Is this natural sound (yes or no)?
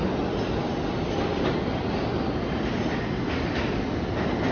yes